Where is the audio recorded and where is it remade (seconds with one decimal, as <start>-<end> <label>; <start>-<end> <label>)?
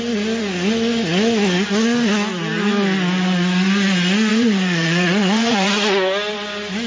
0.0-4.3 recorded; 4.3-5.7 remade; 5.7-6.9 recorded